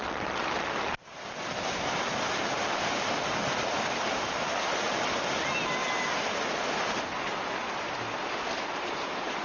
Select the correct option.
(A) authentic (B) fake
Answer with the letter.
A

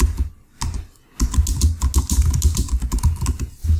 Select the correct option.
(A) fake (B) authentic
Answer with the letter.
B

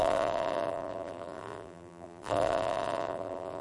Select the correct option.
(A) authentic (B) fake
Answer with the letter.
B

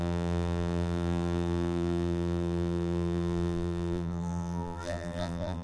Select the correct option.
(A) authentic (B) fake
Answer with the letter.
B